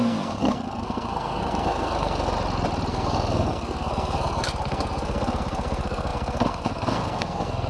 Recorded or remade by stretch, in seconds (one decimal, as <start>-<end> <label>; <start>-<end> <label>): 0.0-2.3 remade; 2.3-2.9 recorded; 2.9-7.7 remade